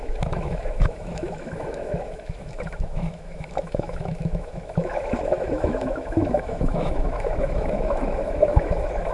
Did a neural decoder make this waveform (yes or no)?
yes